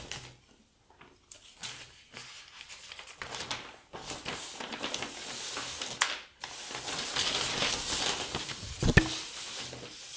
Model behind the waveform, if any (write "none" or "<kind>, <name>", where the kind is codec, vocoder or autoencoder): none